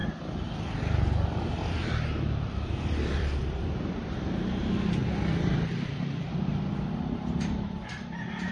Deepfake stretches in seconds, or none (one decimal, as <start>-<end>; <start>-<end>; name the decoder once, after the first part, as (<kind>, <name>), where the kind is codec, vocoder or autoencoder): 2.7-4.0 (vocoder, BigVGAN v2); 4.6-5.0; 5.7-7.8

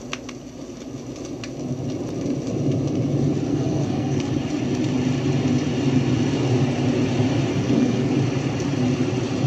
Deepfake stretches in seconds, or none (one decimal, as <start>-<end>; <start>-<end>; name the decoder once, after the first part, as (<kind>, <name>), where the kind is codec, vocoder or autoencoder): 3.5-4.3 (codec, SNAC); 7.5-8.1

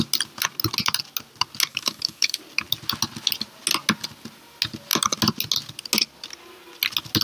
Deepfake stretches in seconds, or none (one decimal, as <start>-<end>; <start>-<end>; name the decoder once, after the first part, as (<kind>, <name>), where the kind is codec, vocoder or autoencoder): 1.7-2.4 (autoencoder, DAC-VAE)

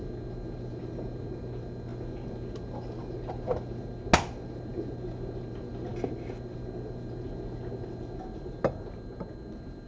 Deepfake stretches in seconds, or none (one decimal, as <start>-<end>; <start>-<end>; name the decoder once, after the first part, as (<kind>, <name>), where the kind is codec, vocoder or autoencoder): none

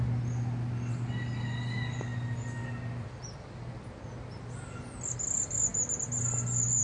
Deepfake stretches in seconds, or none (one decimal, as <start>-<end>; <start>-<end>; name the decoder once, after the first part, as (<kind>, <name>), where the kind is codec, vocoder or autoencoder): none

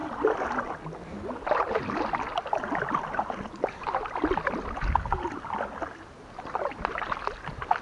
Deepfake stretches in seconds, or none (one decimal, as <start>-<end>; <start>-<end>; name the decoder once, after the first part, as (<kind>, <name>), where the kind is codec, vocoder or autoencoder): none